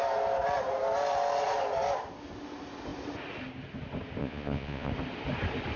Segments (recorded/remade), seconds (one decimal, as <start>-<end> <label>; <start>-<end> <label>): 0.0-4.2 recorded; 4.2-4.9 remade; 4.9-5.8 recorded